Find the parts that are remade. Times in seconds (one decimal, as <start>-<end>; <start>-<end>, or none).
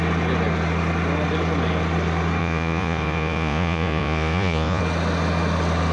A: 2.4-4.8